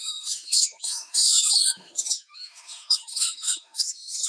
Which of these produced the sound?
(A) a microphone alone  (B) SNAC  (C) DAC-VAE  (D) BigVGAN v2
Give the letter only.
C